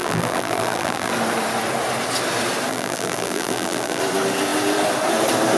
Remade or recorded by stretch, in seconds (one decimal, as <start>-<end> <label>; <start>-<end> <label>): 0.0-1.1 remade; 1.1-2.7 recorded; 2.7-4.0 remade; 4.0-5.6 recorded